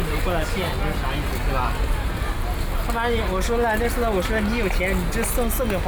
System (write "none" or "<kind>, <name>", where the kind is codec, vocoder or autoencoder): none